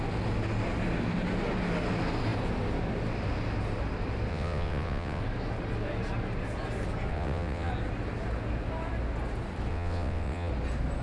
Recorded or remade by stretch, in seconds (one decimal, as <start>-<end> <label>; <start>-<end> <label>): 0.0-4.3 recorded; 4.3-5.2 remade; 5.2-7.1 recorded; 7.1-7.7 remade; 7.7-9.7 recorded; 9.7-10.5 remade; 10.5-11.0 recorded